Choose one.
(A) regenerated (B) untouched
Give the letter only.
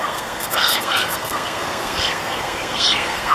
A